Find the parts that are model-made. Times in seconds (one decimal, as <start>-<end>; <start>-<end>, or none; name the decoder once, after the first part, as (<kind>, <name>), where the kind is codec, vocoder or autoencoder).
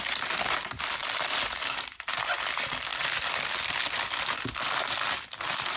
none